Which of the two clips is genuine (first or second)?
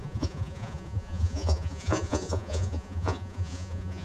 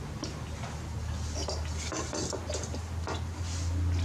second